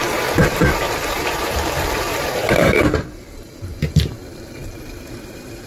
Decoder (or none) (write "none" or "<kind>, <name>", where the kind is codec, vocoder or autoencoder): vocoder, BigVGAN v2